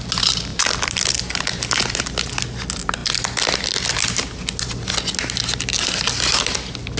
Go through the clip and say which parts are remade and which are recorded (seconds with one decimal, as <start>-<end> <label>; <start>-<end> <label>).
0.0-0.5 recorded; 0.5-1.1 remade; 1.1-7.0 recorded